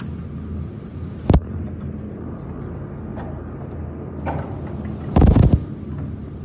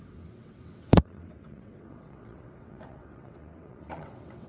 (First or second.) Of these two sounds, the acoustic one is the first